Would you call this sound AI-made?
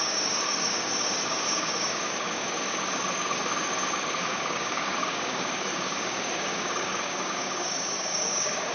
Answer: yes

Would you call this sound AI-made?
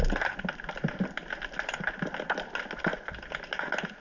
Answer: no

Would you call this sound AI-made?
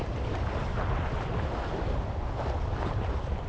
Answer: no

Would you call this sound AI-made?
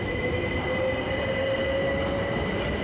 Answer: no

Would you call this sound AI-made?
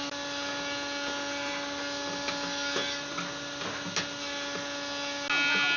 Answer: no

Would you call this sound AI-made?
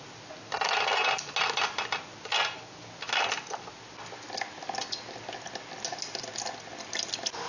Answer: no